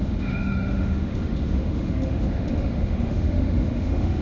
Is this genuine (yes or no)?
no